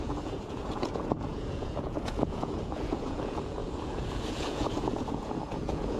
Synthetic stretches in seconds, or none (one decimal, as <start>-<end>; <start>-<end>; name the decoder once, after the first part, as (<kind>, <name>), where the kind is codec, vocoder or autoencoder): 0.0-6.0 (vocoder, Vocos)